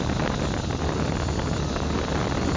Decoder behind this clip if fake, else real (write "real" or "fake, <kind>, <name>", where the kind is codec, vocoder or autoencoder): real